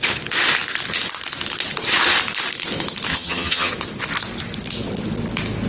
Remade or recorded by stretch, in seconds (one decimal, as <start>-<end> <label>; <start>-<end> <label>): 0.0-3.1 recorded; 3.1-3.7 remade; 3.7-5.7 recorded